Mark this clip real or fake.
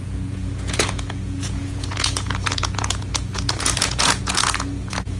fake